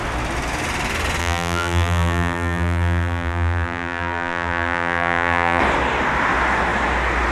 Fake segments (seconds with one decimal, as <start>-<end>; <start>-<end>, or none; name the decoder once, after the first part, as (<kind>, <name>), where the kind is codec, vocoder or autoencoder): 1.2-5.6 (vocoder, BigVGAN v2)